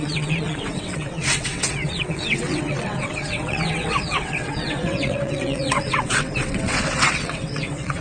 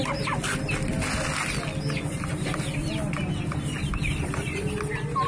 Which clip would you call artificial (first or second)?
first